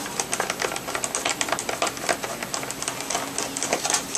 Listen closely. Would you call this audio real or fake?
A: real